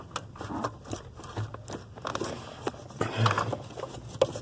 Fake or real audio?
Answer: real